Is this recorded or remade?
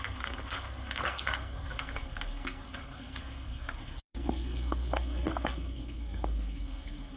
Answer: remade